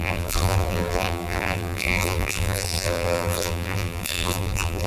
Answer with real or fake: fake